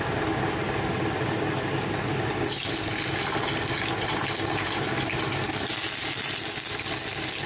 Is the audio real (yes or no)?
yes